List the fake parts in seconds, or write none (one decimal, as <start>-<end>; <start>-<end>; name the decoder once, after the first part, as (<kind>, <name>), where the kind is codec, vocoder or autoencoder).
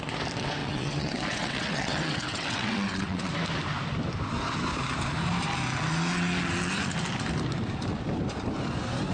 0.6-3.3 (vocoder, WaveNeXt)